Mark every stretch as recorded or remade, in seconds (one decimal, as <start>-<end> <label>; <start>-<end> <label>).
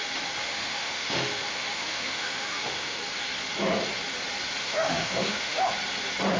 0.0-0.4 recorded; 0.4-3.0 remade; 3.0-4.6 recorded; 4.6-5.7 remade; 5.7-6.4 recorded